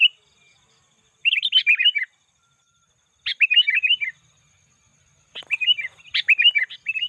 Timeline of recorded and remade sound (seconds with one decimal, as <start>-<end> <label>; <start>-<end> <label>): 0.0-7.1 recorded